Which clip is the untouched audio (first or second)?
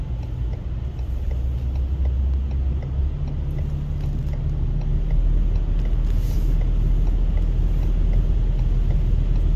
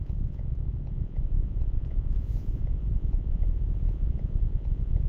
first